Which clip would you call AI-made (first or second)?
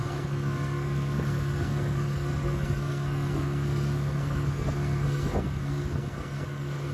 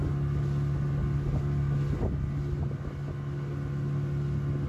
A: first